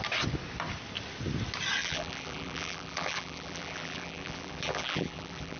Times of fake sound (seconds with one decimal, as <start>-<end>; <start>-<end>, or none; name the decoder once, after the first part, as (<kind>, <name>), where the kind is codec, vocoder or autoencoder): 1.8-5.6 (vocoder, BigVGAN v2)